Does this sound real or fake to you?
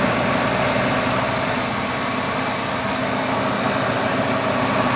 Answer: real